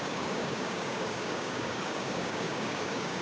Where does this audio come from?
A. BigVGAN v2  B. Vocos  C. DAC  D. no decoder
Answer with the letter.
C